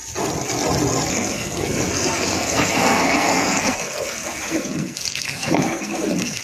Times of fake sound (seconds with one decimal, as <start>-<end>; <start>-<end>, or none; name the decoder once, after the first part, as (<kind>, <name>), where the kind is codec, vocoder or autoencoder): 1.1-6.4 (codec, SNAC)